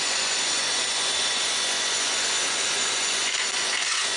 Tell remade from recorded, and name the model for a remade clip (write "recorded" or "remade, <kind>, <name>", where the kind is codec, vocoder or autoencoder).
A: remade, vocoder, Vocos